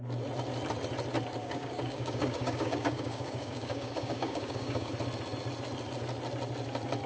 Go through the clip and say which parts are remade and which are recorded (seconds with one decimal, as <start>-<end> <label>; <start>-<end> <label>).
0.0-1.4 recorded; 1.4-4.9 remade; 4.9-7.1 recorded